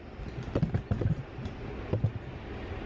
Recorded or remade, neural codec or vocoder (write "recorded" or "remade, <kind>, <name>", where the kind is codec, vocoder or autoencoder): recorded